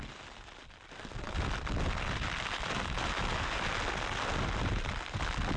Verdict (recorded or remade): recorded